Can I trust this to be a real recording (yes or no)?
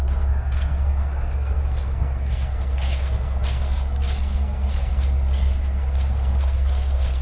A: no